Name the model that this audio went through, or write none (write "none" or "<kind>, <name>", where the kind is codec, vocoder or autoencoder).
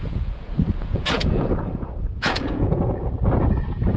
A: vocoder, Vocos